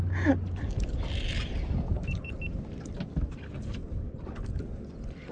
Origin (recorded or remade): recorded